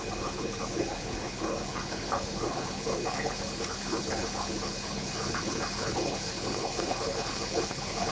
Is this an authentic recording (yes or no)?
no